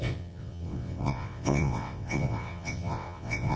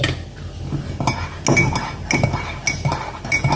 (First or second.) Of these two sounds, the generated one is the first